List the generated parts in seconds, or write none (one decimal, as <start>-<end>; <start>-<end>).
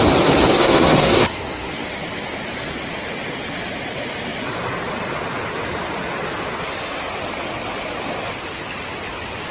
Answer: 0.5-1.7